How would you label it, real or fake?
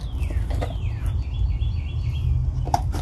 real